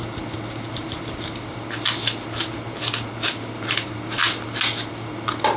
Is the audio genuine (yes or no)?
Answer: yes